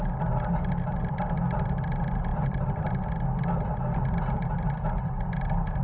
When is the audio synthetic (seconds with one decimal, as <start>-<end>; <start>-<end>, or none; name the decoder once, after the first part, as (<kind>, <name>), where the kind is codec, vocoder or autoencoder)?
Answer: 2.3-3.0 (vocoder, BigVGAN v2)

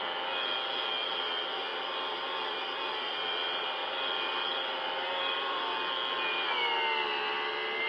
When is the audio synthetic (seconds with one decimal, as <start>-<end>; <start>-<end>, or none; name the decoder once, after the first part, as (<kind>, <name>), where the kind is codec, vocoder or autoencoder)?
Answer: 1.6-5.6 (vocoder, BigVGAN v2)